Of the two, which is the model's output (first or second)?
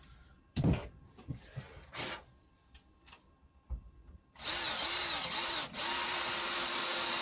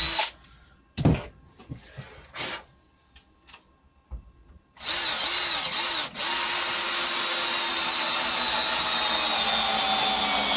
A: first